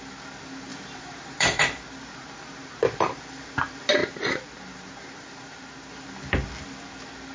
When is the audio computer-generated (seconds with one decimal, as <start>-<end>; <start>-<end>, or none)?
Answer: 0.7-1.6